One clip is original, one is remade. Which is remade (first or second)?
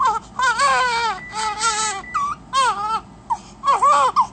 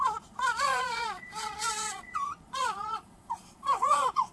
second